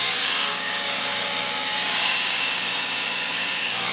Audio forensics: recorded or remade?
remade